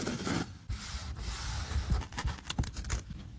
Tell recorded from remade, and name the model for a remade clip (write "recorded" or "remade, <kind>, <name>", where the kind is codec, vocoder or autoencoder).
recorded